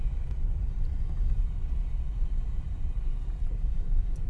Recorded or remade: remade